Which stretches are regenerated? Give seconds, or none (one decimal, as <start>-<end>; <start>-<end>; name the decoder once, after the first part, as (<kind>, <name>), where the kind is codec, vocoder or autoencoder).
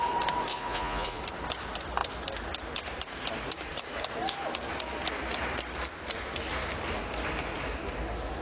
0.5-1.2 (vocoder, Vocos)